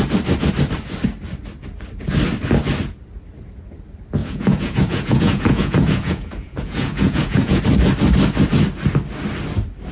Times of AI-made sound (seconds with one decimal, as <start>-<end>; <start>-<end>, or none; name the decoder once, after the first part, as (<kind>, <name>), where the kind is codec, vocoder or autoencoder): 4.2-7.6 (vocoder, Vocos)